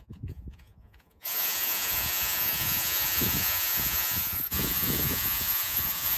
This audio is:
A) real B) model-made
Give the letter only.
B